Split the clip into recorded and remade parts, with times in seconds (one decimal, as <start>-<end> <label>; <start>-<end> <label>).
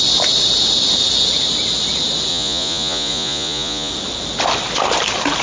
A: 0.0-2.3 recorded; 2.3-3.9 remade; 3.9-5.4 recorded